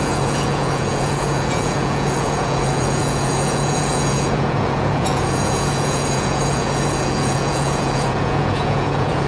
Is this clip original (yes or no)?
no